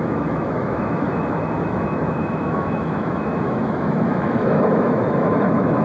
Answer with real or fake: fake